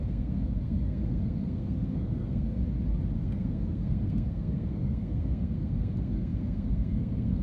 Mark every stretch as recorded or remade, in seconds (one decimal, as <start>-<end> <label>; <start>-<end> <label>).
0.0-2.6 remade; 2.6-3.1 recorded; 3.1-7.4 remade